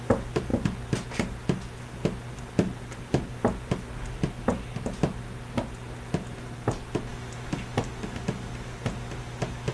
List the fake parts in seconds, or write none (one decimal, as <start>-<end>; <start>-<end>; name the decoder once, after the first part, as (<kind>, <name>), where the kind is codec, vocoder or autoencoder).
none